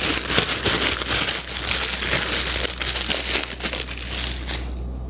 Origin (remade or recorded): recorded